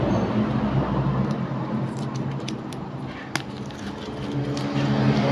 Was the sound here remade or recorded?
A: recorded